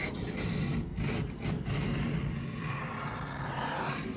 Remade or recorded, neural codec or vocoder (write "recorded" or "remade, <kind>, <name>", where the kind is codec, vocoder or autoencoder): recorded